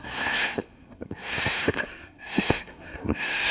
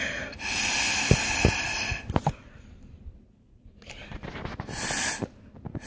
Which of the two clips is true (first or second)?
second